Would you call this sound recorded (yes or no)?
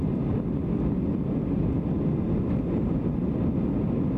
yes